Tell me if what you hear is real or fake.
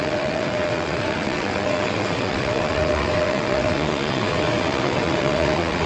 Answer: fake